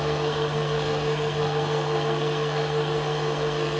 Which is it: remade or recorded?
remade